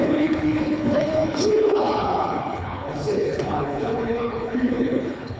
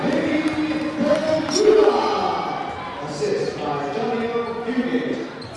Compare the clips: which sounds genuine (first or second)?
second